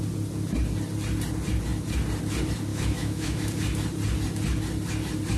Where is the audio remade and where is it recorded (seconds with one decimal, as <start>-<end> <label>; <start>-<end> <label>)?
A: 0.0-2.7 recorded; 2.7-3.5 remade; 3.5-5.4 recorded